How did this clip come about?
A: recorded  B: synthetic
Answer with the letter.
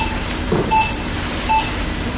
B